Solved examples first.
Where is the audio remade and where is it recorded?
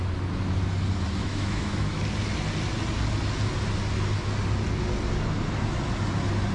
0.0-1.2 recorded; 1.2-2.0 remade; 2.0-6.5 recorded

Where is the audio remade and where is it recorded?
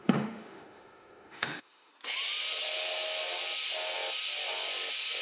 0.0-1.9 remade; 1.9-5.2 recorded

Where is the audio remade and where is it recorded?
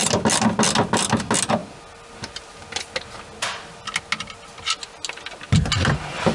0.0-6.3 recorded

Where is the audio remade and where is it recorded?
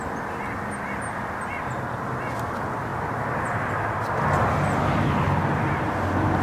0.0-6.4 recorded